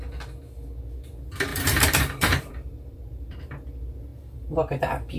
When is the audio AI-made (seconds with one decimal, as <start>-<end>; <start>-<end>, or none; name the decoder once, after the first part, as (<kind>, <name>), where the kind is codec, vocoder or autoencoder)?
1.5-3.4 (vocoder, BigVGAN v2); 4.1-4.8